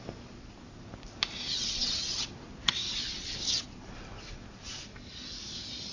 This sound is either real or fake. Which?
real